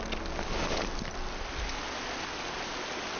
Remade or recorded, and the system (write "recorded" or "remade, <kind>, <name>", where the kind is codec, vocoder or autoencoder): recorded